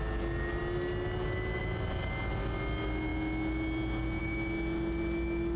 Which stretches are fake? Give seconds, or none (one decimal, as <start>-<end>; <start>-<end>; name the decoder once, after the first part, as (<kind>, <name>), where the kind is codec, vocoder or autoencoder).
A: none